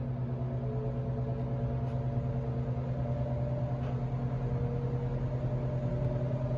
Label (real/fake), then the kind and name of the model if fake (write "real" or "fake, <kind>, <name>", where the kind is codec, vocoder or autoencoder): real